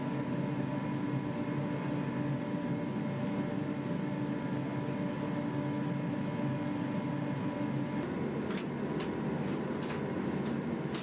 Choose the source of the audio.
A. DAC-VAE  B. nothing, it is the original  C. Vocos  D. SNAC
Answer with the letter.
B